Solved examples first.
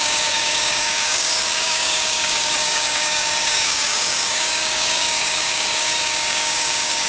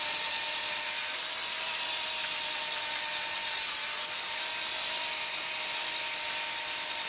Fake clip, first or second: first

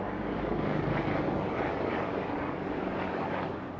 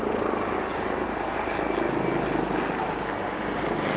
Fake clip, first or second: first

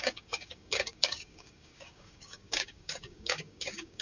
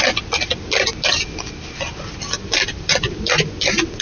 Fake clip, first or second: first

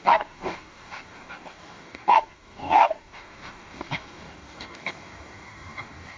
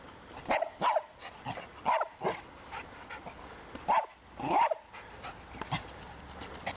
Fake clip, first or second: first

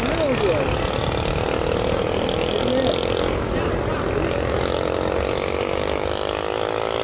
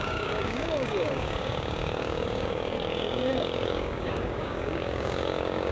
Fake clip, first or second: second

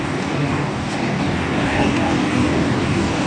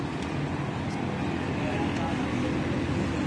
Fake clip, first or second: first